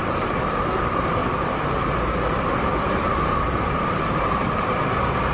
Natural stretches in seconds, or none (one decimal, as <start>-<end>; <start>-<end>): 1.2-2.6